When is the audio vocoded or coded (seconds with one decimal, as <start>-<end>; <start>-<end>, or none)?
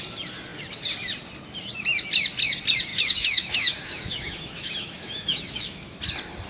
2.9-6.0